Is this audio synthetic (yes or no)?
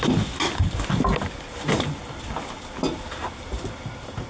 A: no